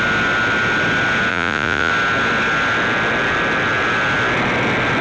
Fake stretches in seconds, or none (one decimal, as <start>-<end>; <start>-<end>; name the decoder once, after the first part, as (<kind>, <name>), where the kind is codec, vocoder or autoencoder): 1.3-1.9 (vocoder, Vocos)